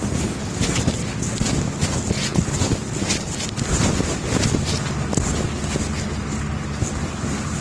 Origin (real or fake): real